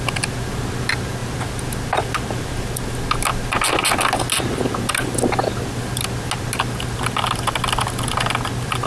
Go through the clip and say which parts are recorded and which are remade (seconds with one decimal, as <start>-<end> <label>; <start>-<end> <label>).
0.0-8.9 recorded